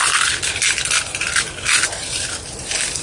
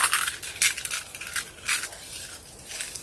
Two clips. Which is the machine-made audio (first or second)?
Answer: first